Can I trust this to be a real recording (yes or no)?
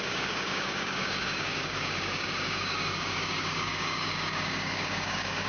no